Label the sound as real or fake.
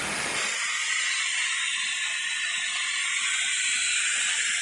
real